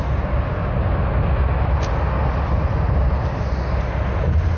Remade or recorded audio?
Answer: recorded